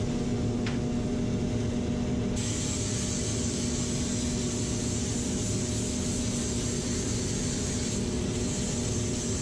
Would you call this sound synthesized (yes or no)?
no